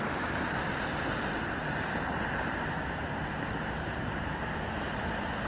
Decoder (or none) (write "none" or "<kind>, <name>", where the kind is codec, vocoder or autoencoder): none